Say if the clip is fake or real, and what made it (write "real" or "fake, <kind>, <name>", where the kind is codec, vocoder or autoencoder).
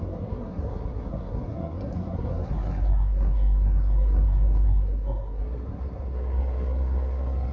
fake, codec, SNAC